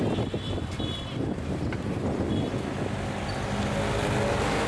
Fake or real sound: real